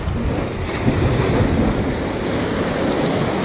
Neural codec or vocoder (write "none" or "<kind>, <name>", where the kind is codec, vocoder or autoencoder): none